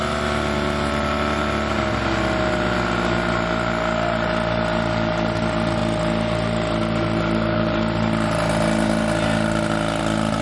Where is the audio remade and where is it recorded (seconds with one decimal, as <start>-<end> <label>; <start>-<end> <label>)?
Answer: 0.0-10.4 recorded

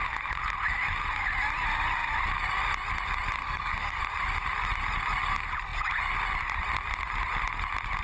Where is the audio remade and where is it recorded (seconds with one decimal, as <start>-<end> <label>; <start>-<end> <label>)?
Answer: 0.0-3.4 recorded; 3.4-4.0 remade; 4.0-8.0 recorded

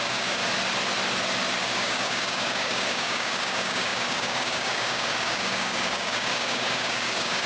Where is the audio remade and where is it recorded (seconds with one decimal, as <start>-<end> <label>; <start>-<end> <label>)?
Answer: 0.0-0.4 remade; 0.4-1.6 recorded; 1.6-7.5 remade

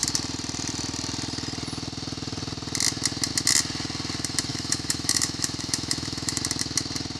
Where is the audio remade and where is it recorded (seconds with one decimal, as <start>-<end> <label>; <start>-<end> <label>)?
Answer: 0.0-4.5 recorded; 4.5-6.4 remade; 6.4-7.2 recorded

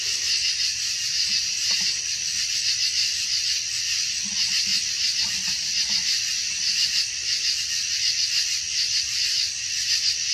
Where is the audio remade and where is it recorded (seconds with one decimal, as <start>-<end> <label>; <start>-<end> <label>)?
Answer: 0.0-0.7 recorded; 0.7-2.0 remade; 2.0-10.3 recorded